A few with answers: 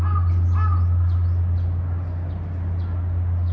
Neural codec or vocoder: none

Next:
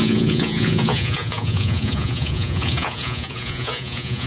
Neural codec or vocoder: vocoder, Vocos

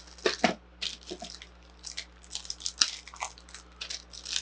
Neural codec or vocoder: none